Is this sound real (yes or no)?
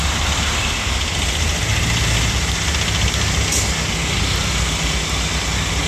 yes